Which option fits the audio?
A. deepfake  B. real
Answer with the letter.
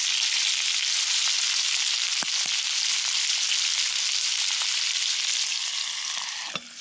B